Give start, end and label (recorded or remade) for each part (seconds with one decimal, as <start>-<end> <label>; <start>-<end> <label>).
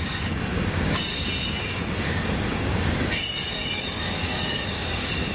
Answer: 0.0-1.1 remade; 1.1-2.0 recorded; 2.0-5.3 remade